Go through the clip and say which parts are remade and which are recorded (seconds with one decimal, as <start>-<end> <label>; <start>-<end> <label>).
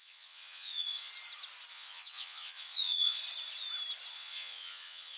0.0-1.1 remade; 1.1-1.7 recorded; 1.7-3.2 remade; 3.2-4.1 recorded; 4.1-5.2 remade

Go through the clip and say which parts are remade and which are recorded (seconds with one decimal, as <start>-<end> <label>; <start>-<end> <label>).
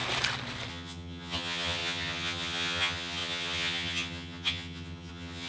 0.0-0.7 recorded; 0.7-5.5 remade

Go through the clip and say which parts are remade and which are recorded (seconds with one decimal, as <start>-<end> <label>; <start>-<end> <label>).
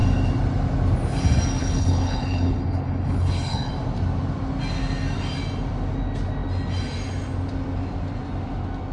0.0-1.6 recorded; 1.6-3.7 remade; 3.7-8.9 recorded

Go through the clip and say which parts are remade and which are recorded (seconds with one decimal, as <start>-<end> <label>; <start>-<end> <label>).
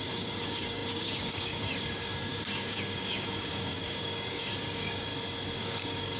0.0-5.1 remade; 5.1-5.6 recorded; 5.6-6.2 remade